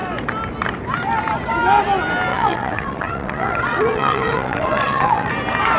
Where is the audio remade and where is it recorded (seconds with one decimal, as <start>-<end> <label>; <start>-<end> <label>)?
0.0-2.3 recorded; 2.3-5.3 remade; 5.3-5.8 recorded